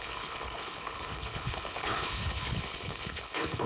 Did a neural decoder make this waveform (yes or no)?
yes